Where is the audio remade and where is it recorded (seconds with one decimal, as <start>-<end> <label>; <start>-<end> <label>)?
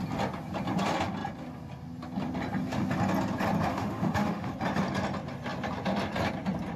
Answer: 0.0-3.7 recorded; 3.7-4.5 remade; 4.5-6.8 recorded